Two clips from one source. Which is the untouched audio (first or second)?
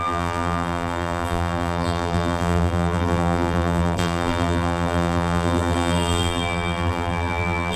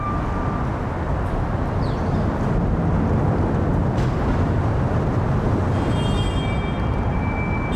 second